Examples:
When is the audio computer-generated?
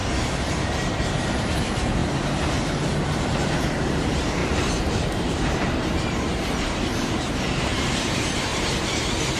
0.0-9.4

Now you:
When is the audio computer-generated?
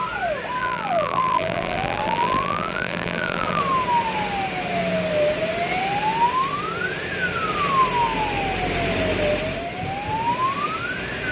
0.6-3.6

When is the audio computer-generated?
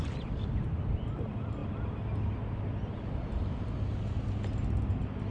none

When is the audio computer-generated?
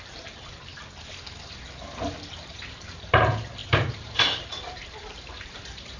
0.0-0.7; 2.5-6.0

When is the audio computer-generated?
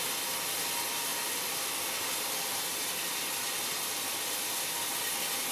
none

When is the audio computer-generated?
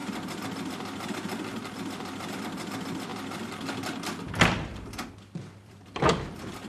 0.0-2.4; 3.1-6.7